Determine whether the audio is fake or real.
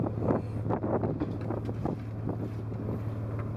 real